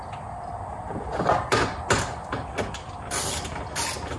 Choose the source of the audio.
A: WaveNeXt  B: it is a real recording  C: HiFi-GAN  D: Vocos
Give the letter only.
B